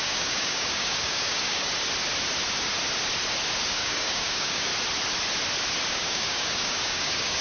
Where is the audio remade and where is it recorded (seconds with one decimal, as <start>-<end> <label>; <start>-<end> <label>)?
0.0-1.7 remade; 1.7-3.6 recorded; 3.6-4.7 remade; 4.7-5.9 recorded; 5.9-7.4 remade